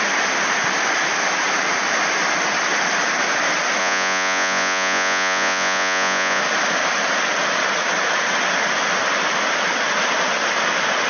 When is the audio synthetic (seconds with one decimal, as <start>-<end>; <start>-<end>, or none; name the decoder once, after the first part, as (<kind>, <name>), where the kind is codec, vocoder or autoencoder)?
3.8-6.4 (vocoder, Vocos)